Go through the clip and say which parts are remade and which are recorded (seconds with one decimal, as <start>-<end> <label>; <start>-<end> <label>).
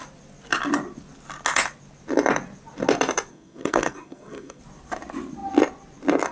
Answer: 0.0-3.3 recorded; 3.3-4.6 remade; 4.6-6.3 recorded